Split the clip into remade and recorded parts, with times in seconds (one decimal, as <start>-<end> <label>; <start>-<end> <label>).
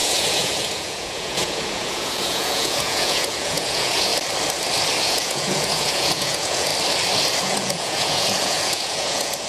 0.0-4.1 remade; 4.1-5.0 recorded; 5.0-6.7 remade; 6.7-7.4 recorded; 7.4-9.5 remade